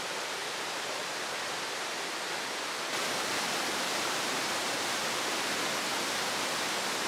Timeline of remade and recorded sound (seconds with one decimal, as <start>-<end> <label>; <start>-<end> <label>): 0.0-3.9 recorded; 3.9-4.4 remade; 4.4-7.1 recorded